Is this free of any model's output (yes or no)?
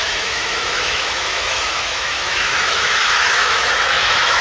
no